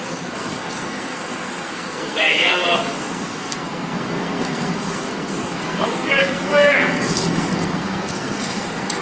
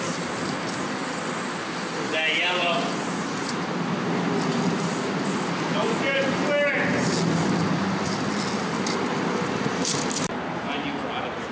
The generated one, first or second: first